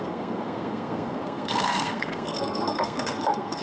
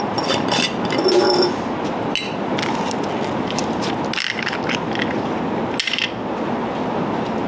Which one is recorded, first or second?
second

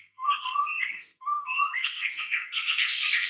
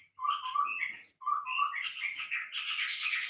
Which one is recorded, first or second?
second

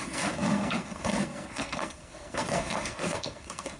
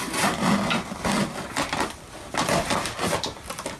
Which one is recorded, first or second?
second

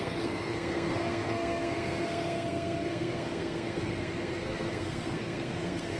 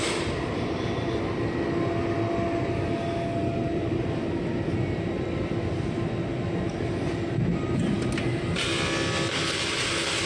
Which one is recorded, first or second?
second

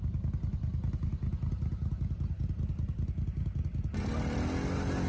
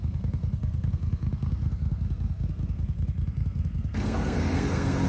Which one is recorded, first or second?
first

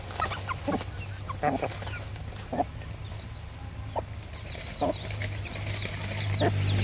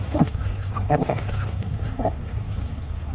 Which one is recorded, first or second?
first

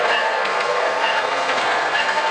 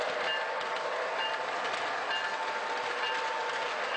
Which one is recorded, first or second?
second